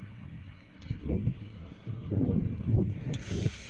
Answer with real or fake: fake